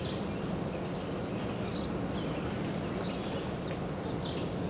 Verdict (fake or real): real